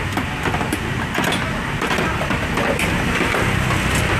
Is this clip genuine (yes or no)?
yes